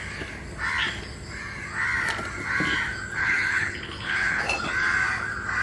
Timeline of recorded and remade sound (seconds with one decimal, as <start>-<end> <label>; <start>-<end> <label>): 0.0-3.2 recorded; 3.2-4.4 remade; 4.4-5.6 recorded